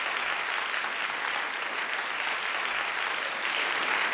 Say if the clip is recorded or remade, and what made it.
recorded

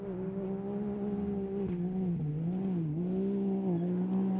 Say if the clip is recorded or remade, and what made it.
recorded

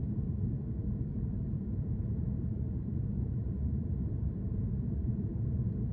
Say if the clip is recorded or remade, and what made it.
remade, vocoder, BigVGAN v2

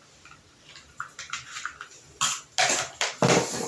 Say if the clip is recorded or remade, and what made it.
recorded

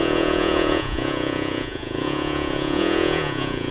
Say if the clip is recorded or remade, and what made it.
remade, vocoder, Vocos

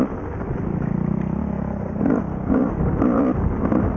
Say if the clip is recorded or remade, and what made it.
recorded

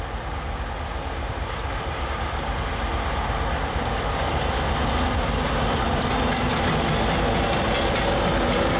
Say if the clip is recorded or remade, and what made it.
recorded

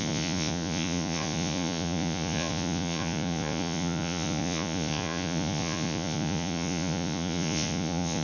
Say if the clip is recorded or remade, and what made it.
remade, vocoder, Vocos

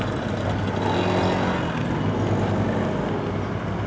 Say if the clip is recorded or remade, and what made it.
recorded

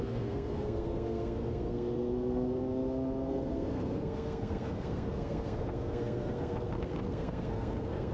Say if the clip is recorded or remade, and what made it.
remade, codec, SNAC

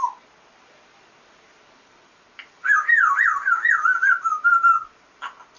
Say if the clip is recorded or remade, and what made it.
recorded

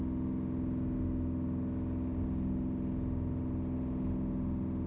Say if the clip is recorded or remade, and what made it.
recorded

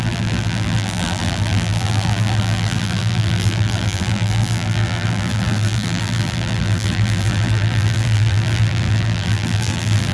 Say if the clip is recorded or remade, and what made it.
remade, vocoder, BigVGAN v2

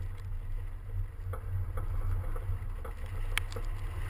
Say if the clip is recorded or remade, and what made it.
recorded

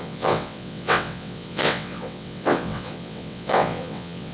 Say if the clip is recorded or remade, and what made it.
remade, vocoder, WaveNeXt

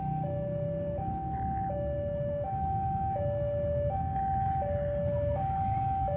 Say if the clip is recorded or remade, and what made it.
remade, autoencoder, DAC-VAE